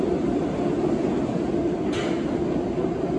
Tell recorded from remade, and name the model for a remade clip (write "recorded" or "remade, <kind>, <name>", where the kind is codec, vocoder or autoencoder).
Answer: recorded